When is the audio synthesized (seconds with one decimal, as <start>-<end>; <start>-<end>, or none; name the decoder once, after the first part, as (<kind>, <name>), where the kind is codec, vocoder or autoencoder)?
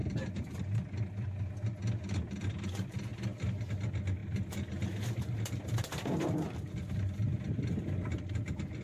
none